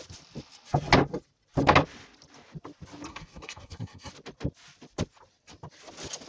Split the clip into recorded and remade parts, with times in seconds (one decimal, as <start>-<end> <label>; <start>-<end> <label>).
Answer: 0.0-3.1 recorded; 3.1-4.1 remade; 4.1-6.3 recorded